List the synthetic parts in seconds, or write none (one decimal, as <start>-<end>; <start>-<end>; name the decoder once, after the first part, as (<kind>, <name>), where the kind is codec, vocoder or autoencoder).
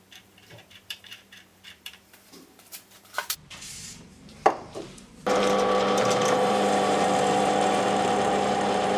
0.0-9.0 (vocoder, BigVGAN v2)